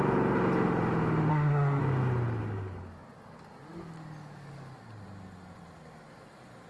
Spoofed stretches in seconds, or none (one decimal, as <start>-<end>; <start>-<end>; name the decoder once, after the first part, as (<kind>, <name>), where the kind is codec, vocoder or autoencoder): 1.3-1.8 (codec, SNAC)